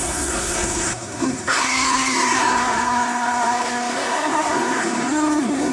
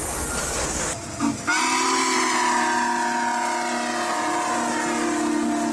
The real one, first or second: second